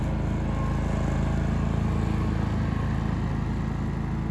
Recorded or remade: recorded